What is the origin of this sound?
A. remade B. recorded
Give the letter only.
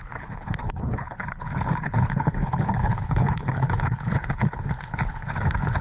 A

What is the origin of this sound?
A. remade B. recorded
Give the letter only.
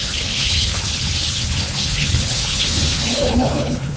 A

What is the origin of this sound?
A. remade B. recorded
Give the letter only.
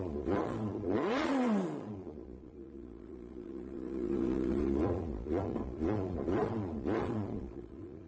A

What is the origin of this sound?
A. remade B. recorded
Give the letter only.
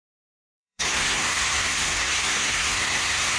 A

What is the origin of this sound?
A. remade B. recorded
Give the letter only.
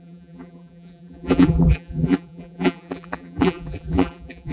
A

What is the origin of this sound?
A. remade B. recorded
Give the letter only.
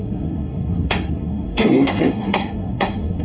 A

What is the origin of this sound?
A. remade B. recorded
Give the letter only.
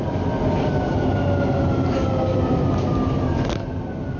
B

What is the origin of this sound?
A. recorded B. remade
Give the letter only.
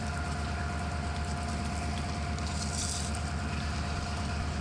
A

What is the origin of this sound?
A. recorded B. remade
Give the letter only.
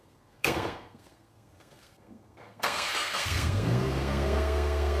B